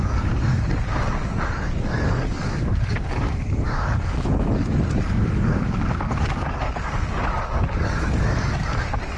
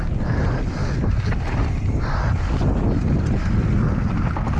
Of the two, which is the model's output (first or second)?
first